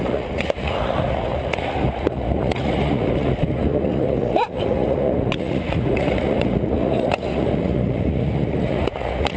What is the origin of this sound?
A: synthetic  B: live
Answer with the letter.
A